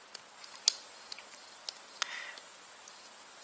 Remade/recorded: recorded